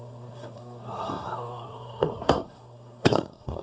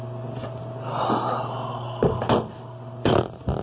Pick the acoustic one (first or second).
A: second